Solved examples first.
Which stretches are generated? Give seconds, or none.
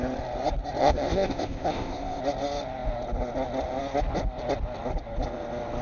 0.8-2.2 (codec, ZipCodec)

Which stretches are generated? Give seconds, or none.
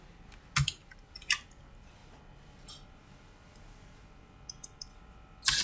none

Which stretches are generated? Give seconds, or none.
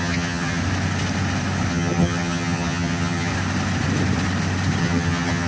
0.0-0.6 (vocoder, HiFi-GAN); 1.7-3.3; 4.8-5.5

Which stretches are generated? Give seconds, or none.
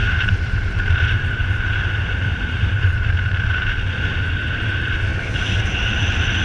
0.0-3.8 (vocoder, BigVGAN v2)